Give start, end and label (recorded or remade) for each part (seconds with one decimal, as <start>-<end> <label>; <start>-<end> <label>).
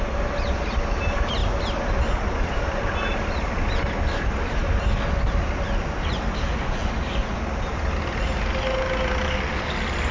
0.0-10.1 recorded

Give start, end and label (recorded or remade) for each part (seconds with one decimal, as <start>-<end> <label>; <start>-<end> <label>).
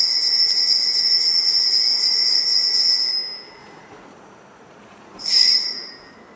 0.0-1.9 recorded; 1.9-2.4 remade; 2.4-3.6 recorded; 3.6-5.9 remade; 5.9-6.4 recorded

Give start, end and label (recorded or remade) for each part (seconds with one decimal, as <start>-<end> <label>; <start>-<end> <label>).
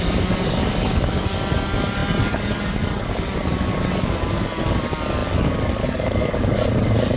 0.0-7.2 remade